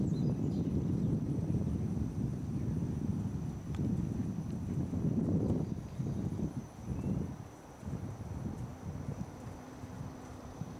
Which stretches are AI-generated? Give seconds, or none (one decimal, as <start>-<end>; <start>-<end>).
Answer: 0.0-3.1; 4.2-10.8